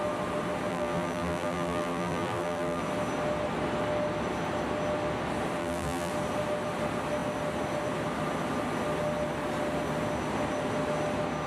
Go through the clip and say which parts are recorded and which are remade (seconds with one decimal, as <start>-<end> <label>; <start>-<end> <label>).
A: 0.0-0.7 recorded; 0.7-2.8 remade; 2.8-5.6 recorded; 5.6-6.1 remade; 6.1-11.5 recorded